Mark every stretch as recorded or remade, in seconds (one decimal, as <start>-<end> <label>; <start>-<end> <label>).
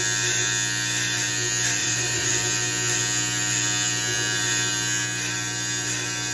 0.0-1.8 recorded; 1.8-2.3 remade; 2.3-6.3 recorded